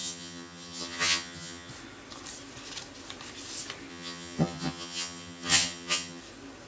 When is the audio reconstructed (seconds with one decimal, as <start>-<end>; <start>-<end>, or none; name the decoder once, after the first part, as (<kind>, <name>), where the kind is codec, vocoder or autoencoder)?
0.0-1.7 (vocoder, HiFi-GAN); 3.9-6.2

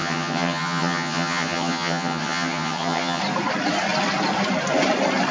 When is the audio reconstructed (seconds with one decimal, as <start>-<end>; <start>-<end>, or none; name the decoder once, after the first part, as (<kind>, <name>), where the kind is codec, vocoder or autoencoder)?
0.0-3.2 (vocoder, HiFi-GAN)

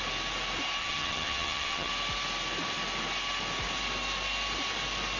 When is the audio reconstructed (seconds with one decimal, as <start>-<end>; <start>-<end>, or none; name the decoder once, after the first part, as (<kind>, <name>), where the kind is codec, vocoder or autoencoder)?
0.8-1.9 (vocoder, HiFi-GAN)